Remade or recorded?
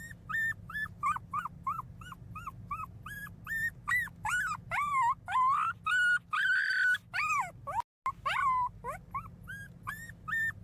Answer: recorded